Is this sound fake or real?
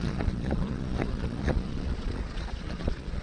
fake